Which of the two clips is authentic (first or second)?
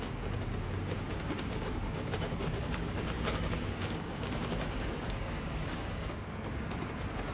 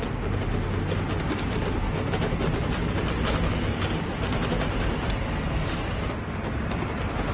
second